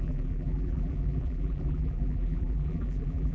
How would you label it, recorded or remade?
remade